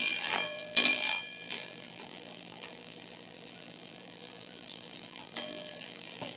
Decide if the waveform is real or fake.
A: fake